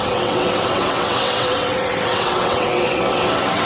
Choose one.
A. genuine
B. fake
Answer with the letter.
B